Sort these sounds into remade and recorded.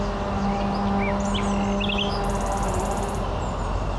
recorded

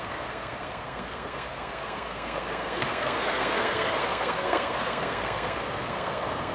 remade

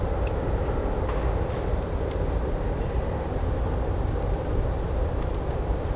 recorded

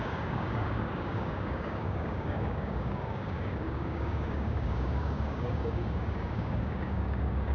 remade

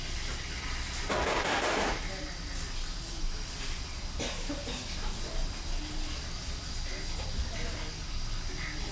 recorded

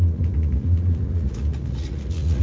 remade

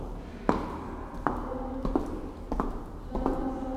recorded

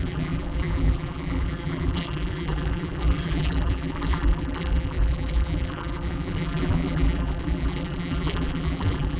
remade